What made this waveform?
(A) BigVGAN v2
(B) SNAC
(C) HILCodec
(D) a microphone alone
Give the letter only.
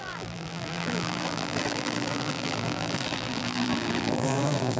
A